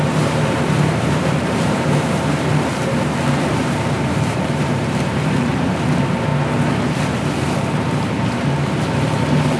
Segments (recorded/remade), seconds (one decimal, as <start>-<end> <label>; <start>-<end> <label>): 0.0-6.3 remade; 6.3-7.7 recorded; 7.7-9.6 remade